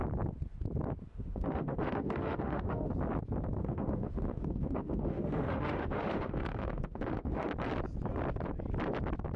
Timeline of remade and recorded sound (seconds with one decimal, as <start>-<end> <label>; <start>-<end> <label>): 0.0-1.1 recorded; 1.1-2.9 remade; 2.9-3.6 recorded; 3.6-7.5 remade; 7.5-9.4 recorded